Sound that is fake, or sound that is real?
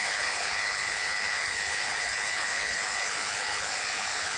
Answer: fake